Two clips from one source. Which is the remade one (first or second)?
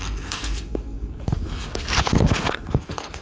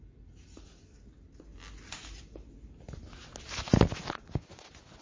first